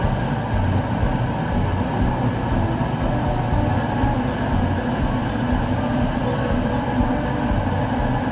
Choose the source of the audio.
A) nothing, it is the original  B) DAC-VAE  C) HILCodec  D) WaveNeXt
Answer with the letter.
A